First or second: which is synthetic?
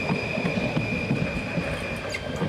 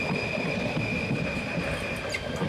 second